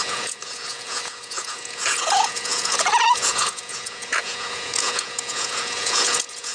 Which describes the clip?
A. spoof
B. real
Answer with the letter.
A